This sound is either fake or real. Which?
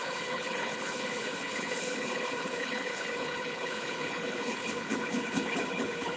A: fake